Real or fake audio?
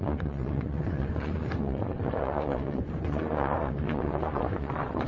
fake